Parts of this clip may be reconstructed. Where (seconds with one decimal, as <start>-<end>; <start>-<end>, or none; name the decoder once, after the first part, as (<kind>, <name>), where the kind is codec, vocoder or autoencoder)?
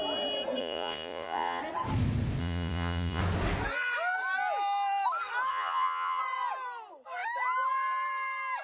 0.6-1.6 (vocoder, Vocos); 2.4-3.2; 5.5-6.2